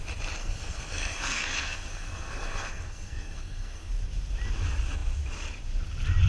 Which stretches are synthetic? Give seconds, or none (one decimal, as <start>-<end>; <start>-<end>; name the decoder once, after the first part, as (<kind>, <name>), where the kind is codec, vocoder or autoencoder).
0.4-3.9 (codec, SNAC)